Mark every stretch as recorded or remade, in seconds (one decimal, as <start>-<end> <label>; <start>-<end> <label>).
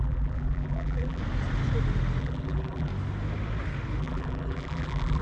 0.0-1.2 remade; 1.2-2.2 recorded; 2.2-2.9 remade; 2.9-4.0 recorded; 4.0-5.2 remade